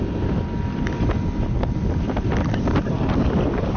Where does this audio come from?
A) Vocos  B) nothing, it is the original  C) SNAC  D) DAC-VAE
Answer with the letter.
B